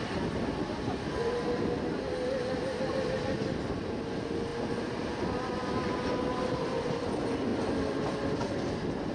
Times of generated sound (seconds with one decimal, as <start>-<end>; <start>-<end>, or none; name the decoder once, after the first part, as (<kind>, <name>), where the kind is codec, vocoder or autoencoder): none